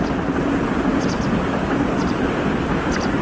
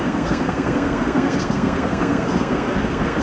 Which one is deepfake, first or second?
second